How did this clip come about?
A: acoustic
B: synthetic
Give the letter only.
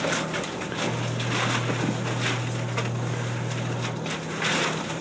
A